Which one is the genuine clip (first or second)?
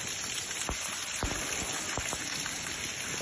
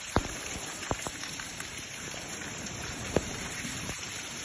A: first